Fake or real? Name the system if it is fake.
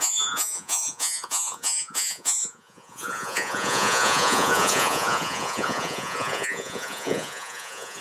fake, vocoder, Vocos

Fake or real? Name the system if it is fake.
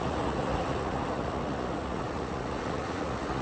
fake, vocoder, Vocos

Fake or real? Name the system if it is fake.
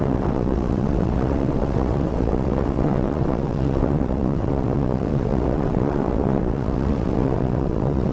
fake, vocoder, WaveNeXt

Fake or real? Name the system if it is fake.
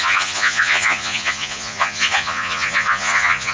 fake, vocoder, Vocos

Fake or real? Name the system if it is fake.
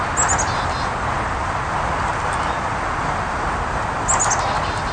real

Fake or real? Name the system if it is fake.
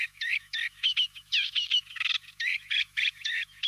fake, autoencoder, DAC-VAE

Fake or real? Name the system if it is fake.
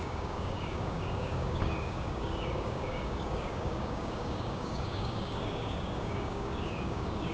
fake, codec, DAC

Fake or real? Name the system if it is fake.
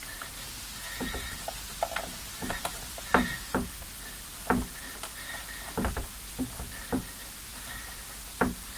real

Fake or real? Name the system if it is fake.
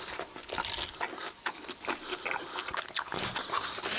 real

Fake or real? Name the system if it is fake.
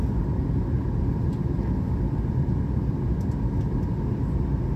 real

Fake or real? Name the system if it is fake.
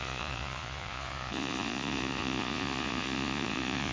fake, vocoder, Vocos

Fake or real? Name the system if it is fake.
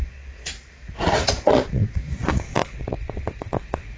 fake, vocoder, Vocos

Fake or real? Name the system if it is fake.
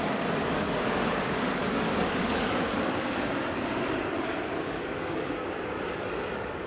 fake, codec, DAC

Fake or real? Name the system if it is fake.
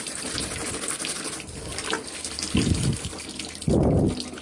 real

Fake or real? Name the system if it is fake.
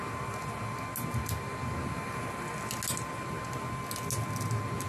real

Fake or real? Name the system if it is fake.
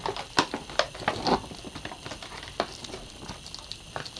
real